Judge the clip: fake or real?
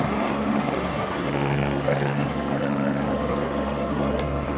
fake